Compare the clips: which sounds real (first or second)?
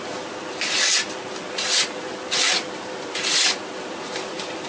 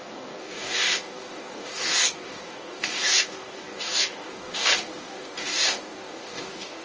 first